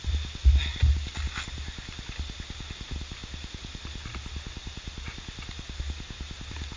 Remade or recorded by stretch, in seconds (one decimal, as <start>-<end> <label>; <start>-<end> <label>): 0.0-6.8 recorded